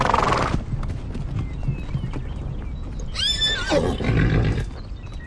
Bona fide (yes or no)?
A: yes